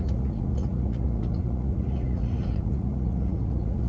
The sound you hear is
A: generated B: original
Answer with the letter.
A